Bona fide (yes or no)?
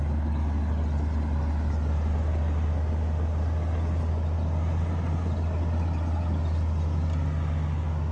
yes